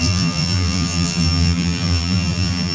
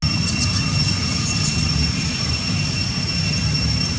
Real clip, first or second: second